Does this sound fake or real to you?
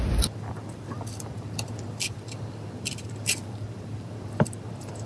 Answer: fake